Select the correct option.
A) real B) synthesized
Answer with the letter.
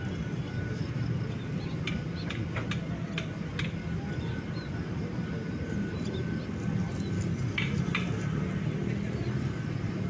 A